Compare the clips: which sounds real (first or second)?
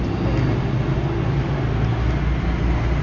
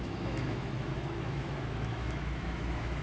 first